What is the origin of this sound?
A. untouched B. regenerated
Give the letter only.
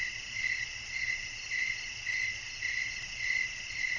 A